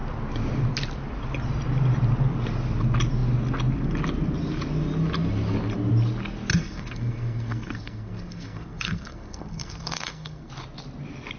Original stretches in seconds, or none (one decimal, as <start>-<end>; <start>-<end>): 0.0-6.5; 10.5-11.4